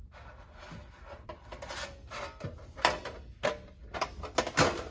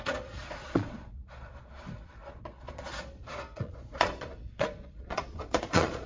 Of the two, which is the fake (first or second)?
second